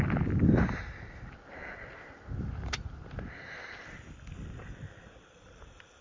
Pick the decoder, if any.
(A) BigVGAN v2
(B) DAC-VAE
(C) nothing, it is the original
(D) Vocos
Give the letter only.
C